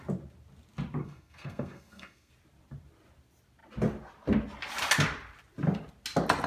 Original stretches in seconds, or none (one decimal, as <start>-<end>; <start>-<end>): 0.0-1.0; 2.3-6.5